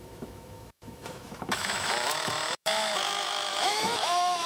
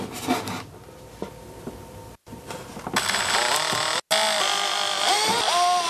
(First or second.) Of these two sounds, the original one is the second